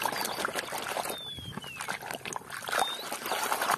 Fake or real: real